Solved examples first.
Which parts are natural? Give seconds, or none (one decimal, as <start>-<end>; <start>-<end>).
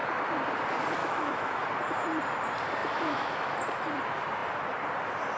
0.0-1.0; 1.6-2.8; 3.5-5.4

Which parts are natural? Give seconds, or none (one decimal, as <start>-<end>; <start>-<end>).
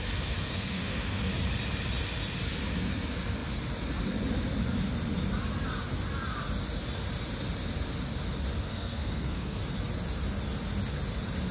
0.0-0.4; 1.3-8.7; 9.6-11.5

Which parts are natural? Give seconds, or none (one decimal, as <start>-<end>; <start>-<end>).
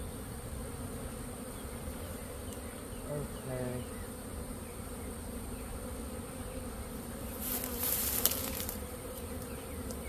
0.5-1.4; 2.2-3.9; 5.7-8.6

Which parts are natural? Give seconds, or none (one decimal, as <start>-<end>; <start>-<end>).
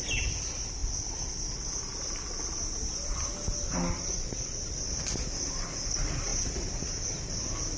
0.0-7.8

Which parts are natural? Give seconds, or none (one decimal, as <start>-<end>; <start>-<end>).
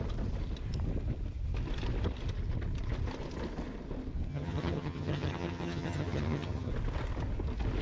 0.0-4.3; 6.7-7.8